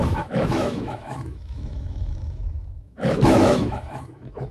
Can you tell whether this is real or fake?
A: fake